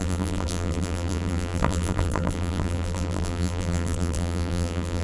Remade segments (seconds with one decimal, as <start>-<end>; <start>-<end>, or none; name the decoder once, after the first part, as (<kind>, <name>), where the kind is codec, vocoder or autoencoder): 0.0-5.0 (vocoder, BigVGAN v2)